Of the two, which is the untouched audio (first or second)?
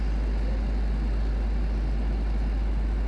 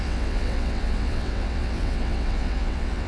first